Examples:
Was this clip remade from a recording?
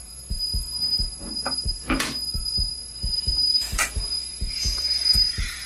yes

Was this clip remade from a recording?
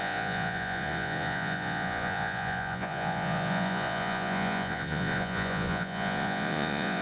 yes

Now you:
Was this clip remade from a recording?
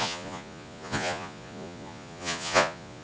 yes